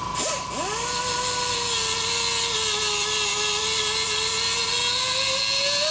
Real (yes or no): yes